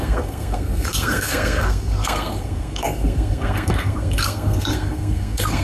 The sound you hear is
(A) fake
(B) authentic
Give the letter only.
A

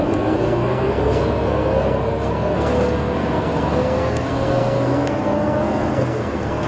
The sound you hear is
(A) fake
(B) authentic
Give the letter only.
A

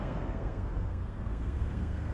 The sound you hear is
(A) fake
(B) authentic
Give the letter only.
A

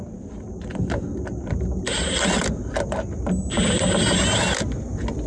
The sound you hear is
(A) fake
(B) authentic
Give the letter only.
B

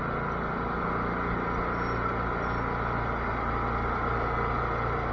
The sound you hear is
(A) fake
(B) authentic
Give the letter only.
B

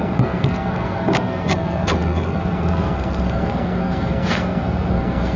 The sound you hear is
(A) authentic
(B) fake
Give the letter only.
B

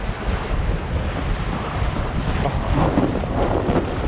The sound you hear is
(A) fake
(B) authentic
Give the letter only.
B